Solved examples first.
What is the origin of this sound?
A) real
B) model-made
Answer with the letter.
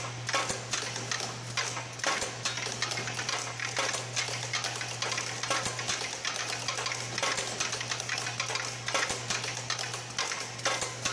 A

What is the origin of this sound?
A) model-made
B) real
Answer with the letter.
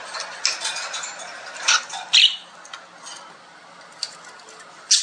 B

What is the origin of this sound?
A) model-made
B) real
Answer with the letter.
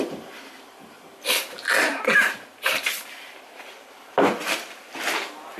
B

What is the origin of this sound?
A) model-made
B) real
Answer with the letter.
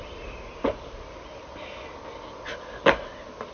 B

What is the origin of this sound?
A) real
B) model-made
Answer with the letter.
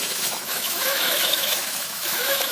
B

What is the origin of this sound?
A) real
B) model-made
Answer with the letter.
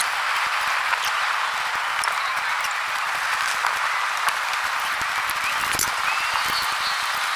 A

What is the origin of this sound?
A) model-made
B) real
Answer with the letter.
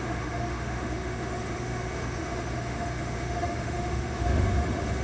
A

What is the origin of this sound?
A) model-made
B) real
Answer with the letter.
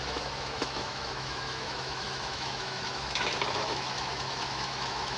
A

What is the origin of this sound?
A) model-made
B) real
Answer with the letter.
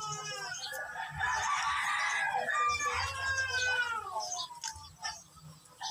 B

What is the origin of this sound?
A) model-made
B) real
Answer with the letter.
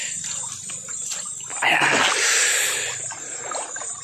B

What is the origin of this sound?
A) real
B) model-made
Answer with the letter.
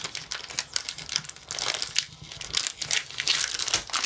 A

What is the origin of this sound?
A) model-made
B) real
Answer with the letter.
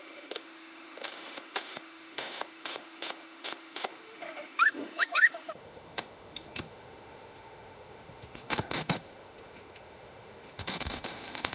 A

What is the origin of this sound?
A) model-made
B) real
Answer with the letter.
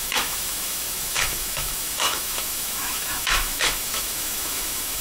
A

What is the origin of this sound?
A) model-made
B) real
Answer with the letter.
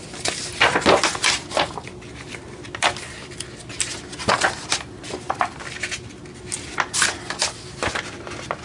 B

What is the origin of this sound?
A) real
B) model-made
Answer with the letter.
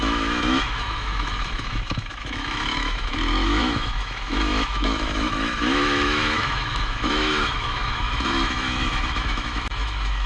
B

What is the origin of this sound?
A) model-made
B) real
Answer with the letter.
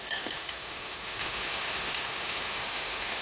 A